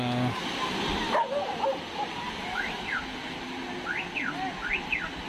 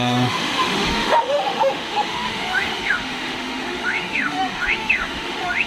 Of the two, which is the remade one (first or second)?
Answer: second